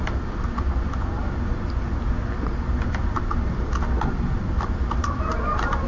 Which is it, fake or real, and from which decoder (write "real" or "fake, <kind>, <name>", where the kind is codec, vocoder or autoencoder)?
real